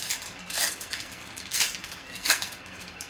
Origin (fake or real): fake